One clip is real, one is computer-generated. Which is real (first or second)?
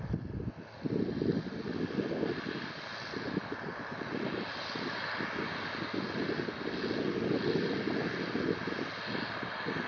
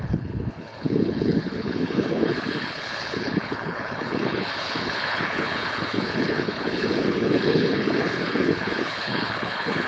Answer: first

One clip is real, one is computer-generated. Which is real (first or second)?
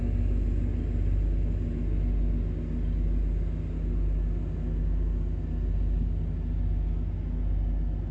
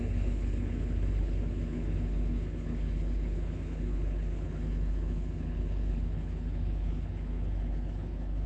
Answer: first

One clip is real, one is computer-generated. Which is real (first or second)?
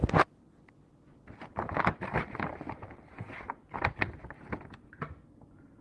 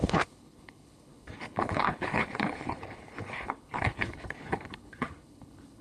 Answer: first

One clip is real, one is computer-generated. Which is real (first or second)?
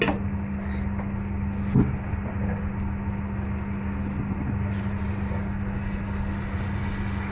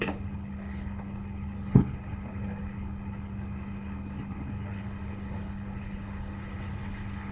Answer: first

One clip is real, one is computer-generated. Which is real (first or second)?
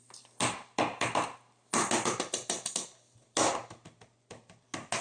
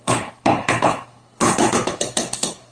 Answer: first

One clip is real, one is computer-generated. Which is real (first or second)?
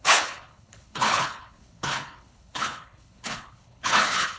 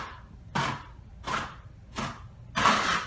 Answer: second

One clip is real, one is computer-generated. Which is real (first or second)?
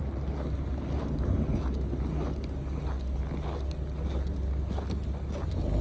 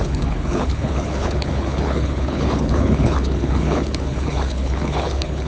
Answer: first